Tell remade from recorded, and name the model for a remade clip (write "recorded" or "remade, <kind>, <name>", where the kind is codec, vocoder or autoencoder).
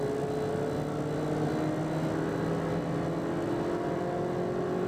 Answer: recorded